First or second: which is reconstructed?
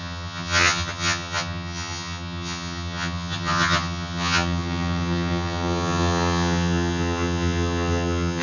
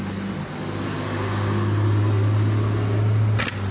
first